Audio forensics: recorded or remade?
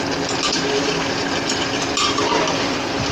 recorded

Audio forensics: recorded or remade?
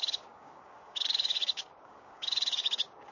remade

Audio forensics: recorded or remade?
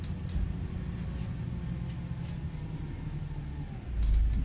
recorded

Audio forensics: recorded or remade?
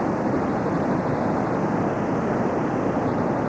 recorded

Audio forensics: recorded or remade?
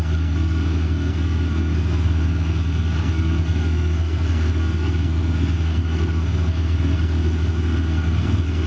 remade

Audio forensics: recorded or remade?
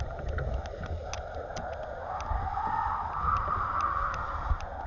recorded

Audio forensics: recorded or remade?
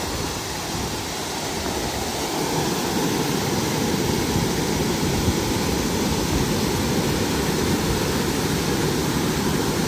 recorded